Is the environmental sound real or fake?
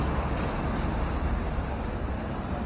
real